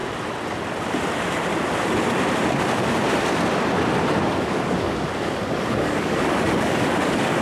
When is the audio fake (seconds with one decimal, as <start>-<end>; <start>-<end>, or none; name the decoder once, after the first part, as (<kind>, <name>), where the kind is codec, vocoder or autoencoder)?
4.3-7.4 (codec, DAC)